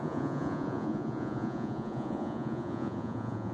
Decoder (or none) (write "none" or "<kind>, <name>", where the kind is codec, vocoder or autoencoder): vocoder, Vocos